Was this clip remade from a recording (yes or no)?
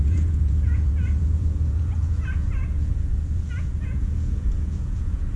yes